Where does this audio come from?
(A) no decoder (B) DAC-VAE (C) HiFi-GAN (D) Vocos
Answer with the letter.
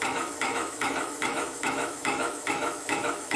B